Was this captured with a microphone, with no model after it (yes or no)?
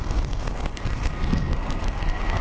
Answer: no